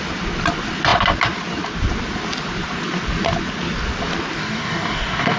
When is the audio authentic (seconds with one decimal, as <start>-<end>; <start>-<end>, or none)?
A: 0.0-4.4